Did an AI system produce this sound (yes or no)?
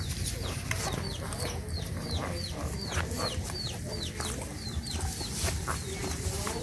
no